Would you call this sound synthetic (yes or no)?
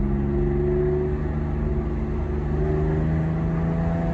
no